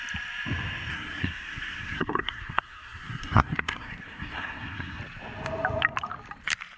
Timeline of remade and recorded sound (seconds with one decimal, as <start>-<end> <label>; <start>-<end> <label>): 0.0-0.9 recorded; 0.9-5.0 remade; 5.0-6.8 recorded